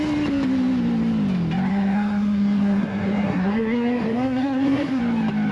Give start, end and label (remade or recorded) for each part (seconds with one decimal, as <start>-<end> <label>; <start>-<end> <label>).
0.0-1.7 recorded; 1.7-5.0 remade; 5.0-5.5 recorded